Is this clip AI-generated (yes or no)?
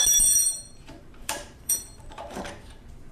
yes